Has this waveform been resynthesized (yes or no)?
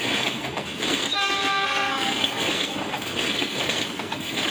yes